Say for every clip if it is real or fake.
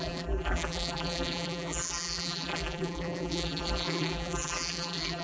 fake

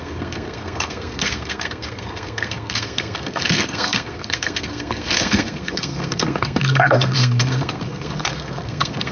fake